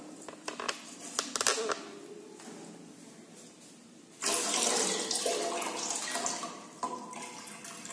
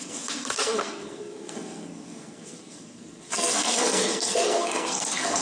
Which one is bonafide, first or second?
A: first